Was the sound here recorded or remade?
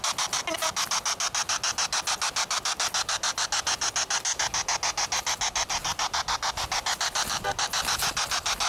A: recorded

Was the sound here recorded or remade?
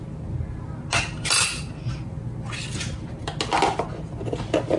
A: recorded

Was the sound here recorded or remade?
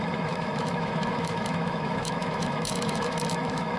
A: remade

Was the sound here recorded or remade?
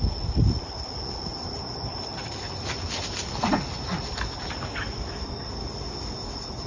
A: recorded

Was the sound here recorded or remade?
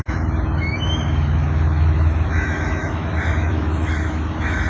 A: remade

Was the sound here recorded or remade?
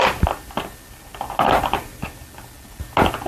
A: recorded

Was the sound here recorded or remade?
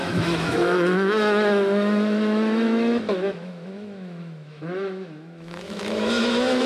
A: remade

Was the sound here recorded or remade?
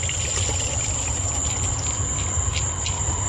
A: recorded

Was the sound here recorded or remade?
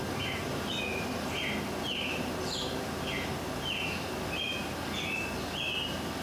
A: recorded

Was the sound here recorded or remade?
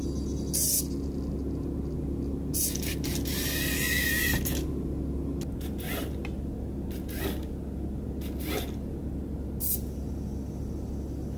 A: recorded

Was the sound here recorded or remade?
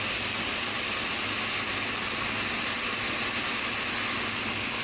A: recorded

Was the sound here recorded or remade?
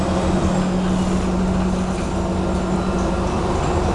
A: recorded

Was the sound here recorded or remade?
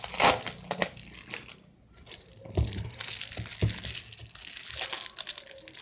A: recorded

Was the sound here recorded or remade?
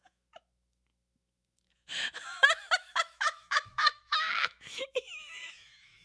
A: remade